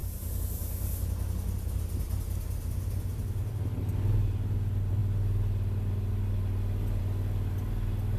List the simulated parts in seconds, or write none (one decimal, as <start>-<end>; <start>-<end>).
none